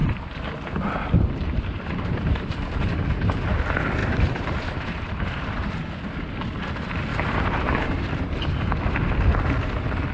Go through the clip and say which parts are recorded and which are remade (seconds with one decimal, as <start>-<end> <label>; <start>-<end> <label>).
0.0-3.0 remade; 3.0-4.0 recorded; 4.0-5.7 remade; 5.7-7.1 recorded; 7.1-8.1 remade; 8.1-10.1 recorded